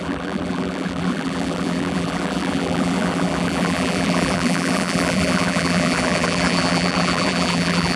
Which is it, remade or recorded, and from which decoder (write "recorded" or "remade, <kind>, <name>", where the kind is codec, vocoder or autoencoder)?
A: remade, vocoder, BigVGAN v2